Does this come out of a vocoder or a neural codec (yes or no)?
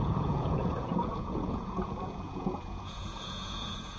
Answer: yes